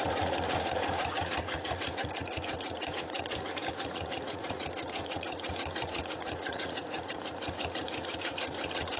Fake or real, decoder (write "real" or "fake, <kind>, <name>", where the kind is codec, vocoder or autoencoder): fake, vocoder, Vocos